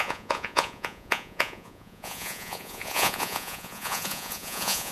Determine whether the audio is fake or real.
fake